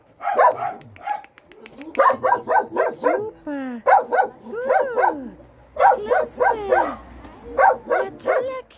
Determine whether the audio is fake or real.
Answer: real